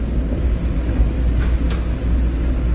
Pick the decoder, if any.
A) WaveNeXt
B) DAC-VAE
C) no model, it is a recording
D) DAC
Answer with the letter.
C